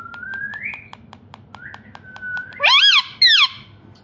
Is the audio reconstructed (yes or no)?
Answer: no